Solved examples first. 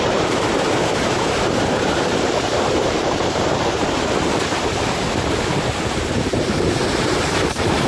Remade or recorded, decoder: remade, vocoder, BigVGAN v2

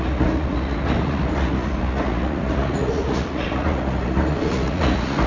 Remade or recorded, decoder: remade, vocoder, Vocos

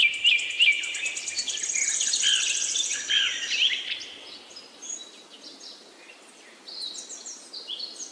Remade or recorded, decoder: recorded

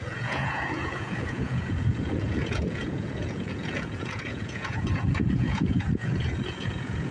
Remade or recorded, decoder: remade, vocoder, Vocos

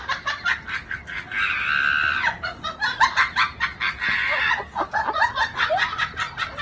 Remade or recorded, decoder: recorded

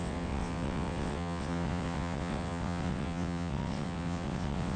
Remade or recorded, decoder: remade, vocoder, WaveNeXt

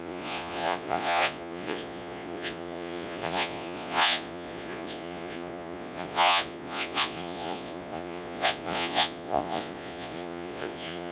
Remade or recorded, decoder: remade, vocoder, Vocos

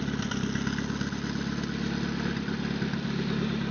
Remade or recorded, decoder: recorded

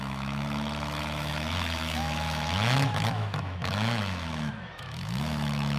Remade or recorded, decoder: remade, autoencoder, DAC-VAE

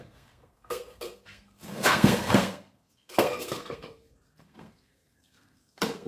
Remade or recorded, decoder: remade, codec, SNAC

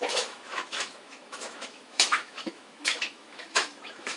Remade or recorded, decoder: remade, autoencoder, DAC-VAE